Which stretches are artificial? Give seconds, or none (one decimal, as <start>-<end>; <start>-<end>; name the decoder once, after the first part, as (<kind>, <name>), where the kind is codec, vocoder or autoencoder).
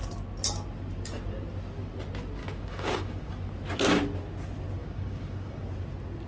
2.4-3.3 (codec, DAC); 4.8-5.6